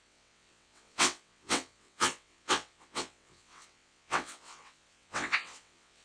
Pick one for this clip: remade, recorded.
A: remade